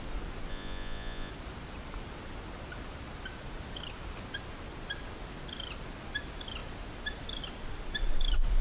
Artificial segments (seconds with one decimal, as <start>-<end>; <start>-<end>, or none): 0.5-1.3